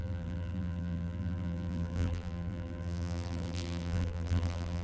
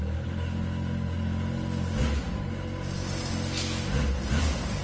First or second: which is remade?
first